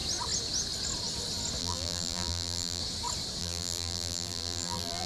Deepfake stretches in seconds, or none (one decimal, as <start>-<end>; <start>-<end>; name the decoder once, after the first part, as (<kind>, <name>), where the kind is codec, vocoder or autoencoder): 1.6-2.8 (vocoder, BigVGAN v2); 3.4-5.1